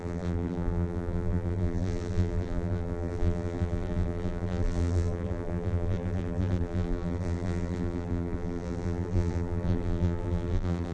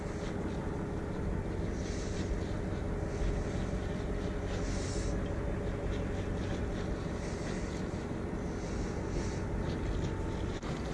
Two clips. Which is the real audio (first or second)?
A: second